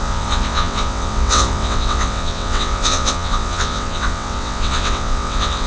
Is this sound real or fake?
fake